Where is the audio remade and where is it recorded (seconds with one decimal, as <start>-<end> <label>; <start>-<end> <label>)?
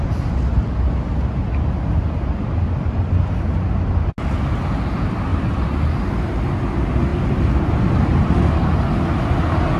0.0-9.8 recorded